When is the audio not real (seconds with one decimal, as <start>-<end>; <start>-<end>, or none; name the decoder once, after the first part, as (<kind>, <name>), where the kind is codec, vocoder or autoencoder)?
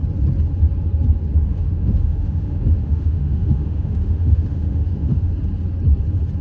1.5-5.3 (autoencoder, DAC-VAE)